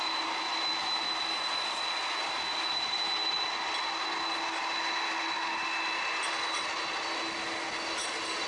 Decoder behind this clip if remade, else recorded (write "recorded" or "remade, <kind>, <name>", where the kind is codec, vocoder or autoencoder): recorded